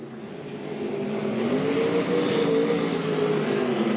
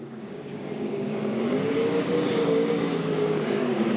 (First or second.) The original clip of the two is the first